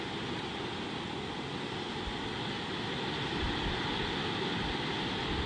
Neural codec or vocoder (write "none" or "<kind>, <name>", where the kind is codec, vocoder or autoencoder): none